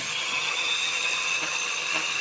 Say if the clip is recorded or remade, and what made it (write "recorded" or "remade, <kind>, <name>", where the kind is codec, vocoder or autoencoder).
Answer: remade, vocoder, HiFi-GAN